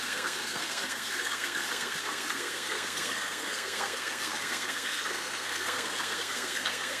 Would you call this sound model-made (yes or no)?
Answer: yes